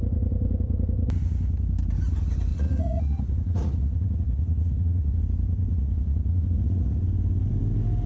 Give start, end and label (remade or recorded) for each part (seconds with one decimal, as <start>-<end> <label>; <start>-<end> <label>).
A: 0.0-2.5 recorded; 2.5-5.2 remade; 5.2-5.7 recorded; 5.7-7.0 remade; 7.0-8.1 recorded